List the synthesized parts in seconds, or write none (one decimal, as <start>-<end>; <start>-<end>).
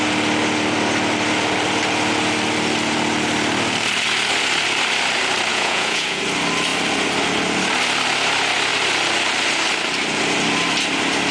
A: 5.5-6.2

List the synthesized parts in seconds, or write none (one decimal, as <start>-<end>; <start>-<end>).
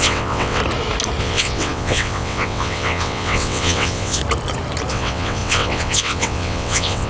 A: 0.0-0.6; 1.2-4.2; 4.9-7.1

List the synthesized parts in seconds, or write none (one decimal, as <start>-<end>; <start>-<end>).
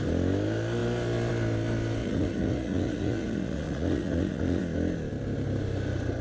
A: 2.0-4.6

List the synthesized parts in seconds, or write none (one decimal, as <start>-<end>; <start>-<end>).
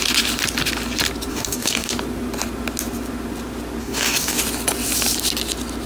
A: 1.3-1.9; 3.8-4.4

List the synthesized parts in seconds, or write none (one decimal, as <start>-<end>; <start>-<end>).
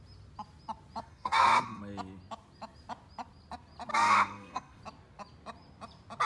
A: 1.0-1.8; 3.9-4.8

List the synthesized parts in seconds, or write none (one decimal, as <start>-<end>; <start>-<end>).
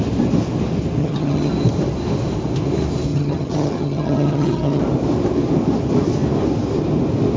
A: 1.0-1.5; 3.1-4.8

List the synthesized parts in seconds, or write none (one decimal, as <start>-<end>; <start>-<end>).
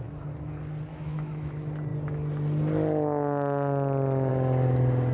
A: 0.9-1.5